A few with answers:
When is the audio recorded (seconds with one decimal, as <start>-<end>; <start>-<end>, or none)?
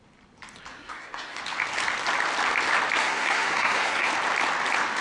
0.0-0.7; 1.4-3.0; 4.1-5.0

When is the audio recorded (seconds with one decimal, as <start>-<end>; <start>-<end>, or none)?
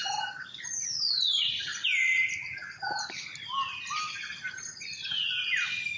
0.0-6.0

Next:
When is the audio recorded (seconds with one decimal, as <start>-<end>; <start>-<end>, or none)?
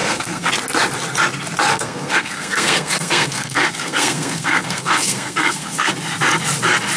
0.5-1.7; 5.9-7.0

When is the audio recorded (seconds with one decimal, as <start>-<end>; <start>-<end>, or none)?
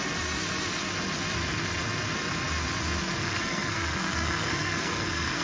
0.0-3.2